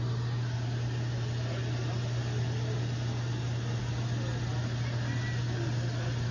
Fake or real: real